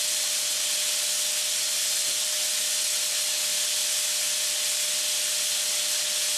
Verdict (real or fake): real